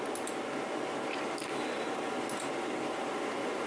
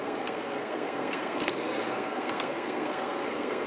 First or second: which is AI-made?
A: second